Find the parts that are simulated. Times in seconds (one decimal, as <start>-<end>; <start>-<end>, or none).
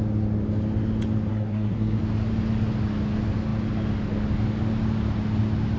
1.3-2.0